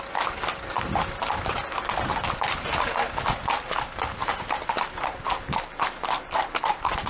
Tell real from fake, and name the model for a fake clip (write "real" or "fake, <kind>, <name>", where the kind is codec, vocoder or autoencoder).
real